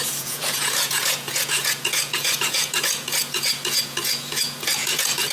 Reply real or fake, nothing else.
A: fake